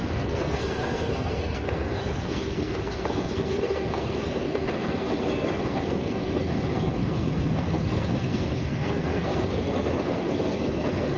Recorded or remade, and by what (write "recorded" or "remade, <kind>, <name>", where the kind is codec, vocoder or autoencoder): remade, codec, SNAC